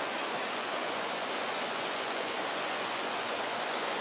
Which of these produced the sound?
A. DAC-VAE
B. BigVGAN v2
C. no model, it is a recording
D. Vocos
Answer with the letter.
D